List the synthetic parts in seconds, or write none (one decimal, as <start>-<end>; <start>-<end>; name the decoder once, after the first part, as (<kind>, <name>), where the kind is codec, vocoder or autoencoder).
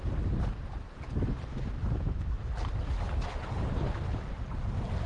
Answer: 1.5-2.5 (autoencoder, DAC-VAE)